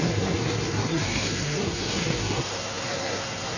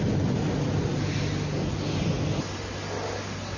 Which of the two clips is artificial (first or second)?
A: first